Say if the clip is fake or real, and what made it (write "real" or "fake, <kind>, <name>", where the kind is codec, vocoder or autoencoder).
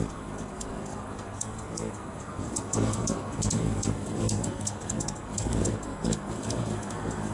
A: fake, codec, SNAC